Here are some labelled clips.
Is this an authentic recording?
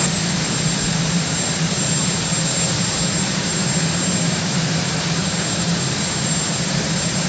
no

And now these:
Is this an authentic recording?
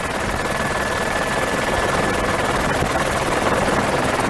yes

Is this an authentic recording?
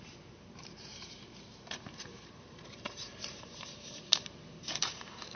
no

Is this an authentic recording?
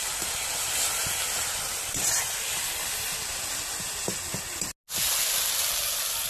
yes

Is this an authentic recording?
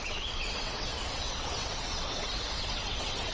no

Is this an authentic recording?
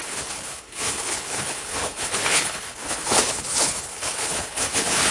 no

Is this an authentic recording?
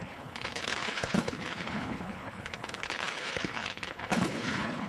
no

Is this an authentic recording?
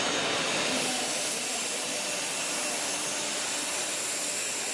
yes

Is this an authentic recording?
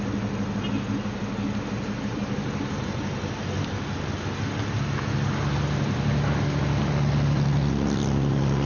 yes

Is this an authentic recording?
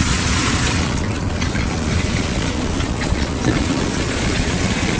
no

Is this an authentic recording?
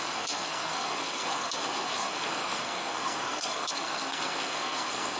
no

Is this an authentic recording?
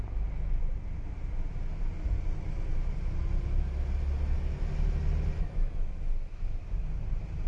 yes